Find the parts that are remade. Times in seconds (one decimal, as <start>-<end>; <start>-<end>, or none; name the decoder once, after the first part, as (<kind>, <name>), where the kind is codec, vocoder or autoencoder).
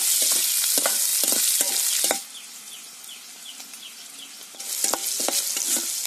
none